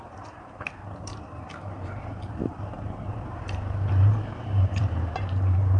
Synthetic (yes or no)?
yes